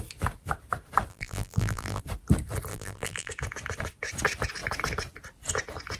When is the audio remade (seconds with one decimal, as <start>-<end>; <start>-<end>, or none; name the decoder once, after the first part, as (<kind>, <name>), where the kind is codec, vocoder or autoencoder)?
1.1-2.0 (vocoder, BigVGAN v2); 2.7-3.3